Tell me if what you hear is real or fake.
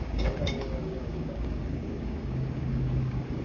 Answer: fake